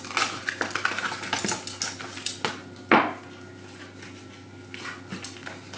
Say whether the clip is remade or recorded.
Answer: recorded